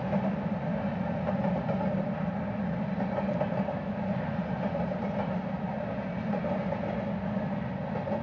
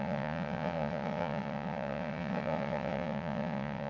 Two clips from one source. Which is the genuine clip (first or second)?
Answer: first